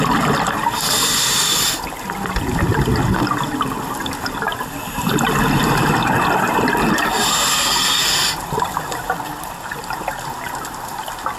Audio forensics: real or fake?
real